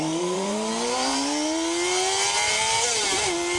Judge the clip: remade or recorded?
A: remade